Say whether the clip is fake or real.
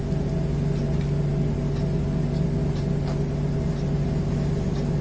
real